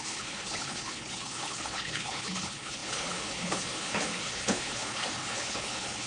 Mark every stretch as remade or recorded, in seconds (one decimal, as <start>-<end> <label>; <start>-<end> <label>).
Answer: 0.0-6.1 remade